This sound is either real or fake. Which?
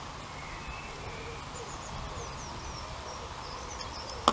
real